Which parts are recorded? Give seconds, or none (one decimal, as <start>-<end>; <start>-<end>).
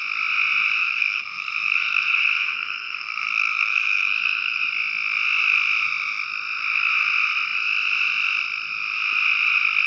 0.0-0.8; 4.6-9.9